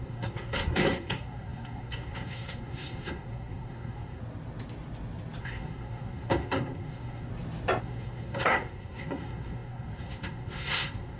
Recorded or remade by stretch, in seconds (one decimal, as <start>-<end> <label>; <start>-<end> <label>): 0.0-4.2 remade; 4.2-5.4 recorded; 5.4-7.3 remade; 7.3-7.8 recorded; 7.8-11.2 remade